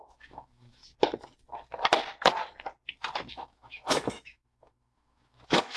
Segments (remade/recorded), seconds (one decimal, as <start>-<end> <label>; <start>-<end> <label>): 0.0-0.8 remade; 0.8-3.3 recorded; 3.3-5.8 remade